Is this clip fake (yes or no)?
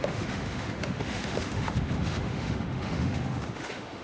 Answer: yes